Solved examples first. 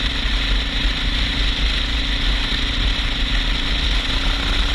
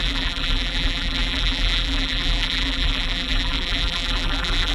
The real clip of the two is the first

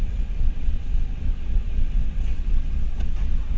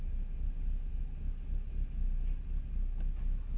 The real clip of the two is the second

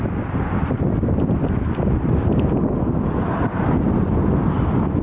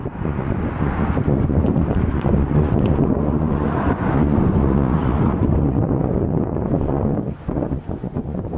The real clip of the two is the first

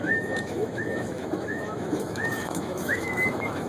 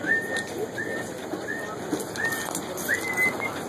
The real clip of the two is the second